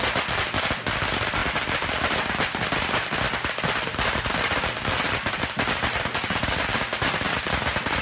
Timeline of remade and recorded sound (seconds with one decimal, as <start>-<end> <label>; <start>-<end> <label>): 0.0-8.0 recorded